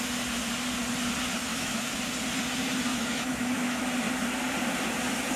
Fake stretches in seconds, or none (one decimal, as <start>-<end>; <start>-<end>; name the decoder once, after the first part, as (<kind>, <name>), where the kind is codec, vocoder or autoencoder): 1.5-2.0 (autoencoder, DAC-VAE); 2.9-3.8